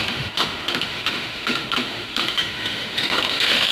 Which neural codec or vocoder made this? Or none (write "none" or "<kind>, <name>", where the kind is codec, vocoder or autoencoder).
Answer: autoencoder, DAC-VAE